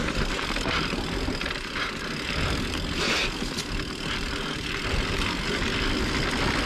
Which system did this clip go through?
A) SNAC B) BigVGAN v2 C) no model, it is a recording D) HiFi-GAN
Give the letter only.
C